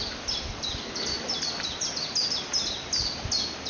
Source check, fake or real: real